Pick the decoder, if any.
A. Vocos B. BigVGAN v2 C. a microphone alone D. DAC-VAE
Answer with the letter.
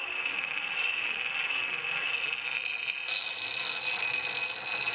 C